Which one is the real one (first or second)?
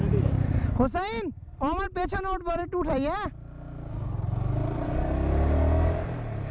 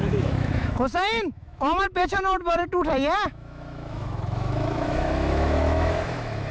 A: first